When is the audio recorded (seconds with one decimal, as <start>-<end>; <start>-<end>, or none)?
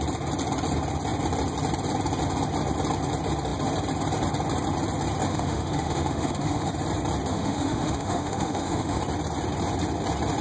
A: 0.0-5.3; 6.7-7.3; 9.0-10.4